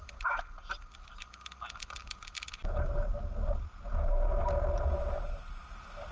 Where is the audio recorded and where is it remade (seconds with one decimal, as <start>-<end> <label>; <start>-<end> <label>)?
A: 0.0-6.1 recorded